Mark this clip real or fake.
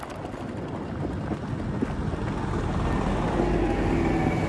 real